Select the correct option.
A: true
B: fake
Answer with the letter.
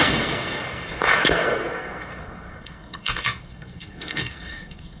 B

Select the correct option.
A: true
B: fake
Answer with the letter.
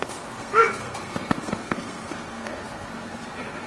B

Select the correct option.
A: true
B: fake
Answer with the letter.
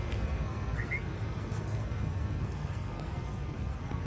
B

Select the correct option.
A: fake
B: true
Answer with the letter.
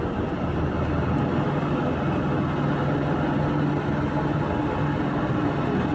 B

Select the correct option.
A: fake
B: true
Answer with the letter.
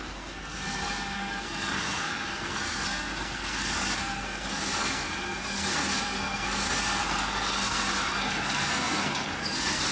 A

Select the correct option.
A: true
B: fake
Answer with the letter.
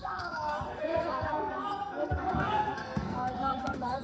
B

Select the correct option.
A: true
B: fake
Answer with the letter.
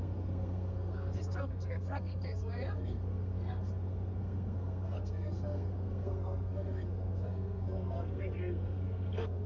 B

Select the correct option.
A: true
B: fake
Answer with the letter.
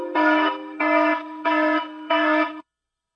B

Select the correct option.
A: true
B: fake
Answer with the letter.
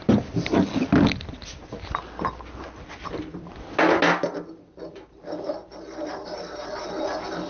A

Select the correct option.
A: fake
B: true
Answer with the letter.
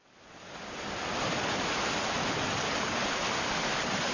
B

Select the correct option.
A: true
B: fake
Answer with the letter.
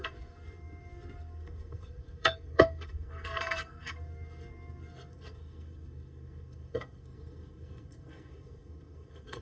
B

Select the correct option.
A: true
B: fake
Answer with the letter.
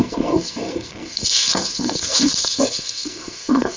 B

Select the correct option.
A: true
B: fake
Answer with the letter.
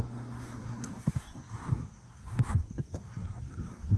B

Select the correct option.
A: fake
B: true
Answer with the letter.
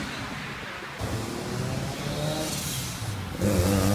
B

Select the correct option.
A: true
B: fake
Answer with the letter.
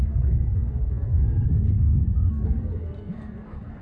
B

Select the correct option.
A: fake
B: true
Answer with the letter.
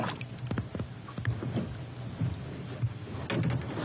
B